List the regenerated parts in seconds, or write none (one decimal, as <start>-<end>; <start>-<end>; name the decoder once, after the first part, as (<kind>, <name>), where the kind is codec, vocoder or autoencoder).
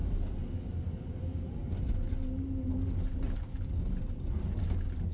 none